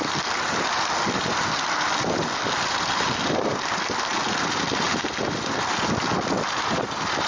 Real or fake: real